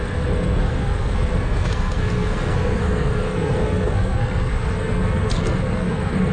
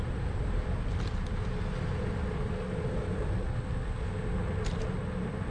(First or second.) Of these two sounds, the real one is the second